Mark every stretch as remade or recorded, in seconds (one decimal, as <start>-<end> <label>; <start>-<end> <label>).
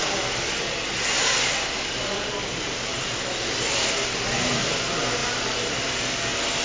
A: 0.0-2.9 recorded; 2.9-4.1 remade; 4.1-5.2 recorded; 5.2-5.9 remade; 5.9-6.6 recorded